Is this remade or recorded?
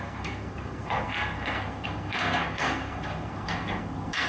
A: remade